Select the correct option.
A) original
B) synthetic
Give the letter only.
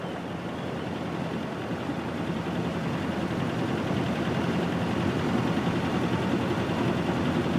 A